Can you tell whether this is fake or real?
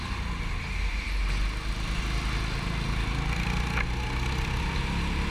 real